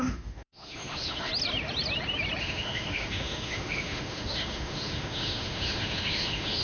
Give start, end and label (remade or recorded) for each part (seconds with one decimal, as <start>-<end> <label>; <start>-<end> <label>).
0.0-1.3 remade; 1.3-2.4 recorded; 2.4-6.6 remade